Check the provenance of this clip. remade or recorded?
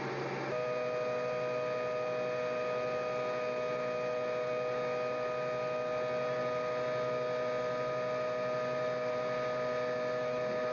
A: recorded